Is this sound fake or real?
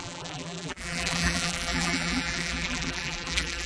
fake